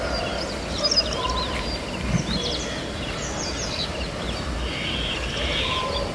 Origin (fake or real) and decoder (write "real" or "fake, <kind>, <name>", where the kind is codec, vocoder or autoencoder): real